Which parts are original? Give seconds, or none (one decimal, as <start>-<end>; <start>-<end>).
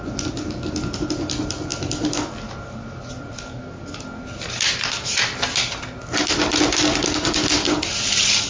0.0-8.5